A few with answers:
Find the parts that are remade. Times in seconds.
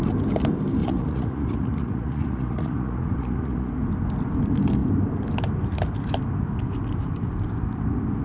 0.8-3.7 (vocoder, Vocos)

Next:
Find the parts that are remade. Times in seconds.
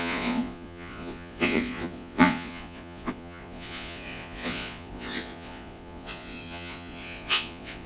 0.0-7.9 (vocoder, Vocos)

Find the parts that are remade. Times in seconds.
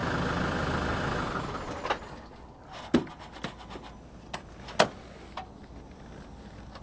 none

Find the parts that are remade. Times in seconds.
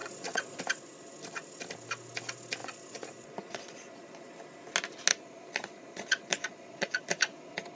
0.0-0.6 (vocoder, Vocos); 2.6-4.3; 5.1-7.0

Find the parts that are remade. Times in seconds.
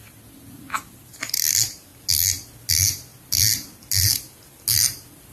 none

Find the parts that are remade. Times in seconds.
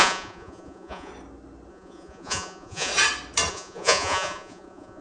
0.0-1.1 (vocoder, Vocos); 1.7-2.9; 3.5-5.0